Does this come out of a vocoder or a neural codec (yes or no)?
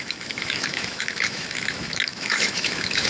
yes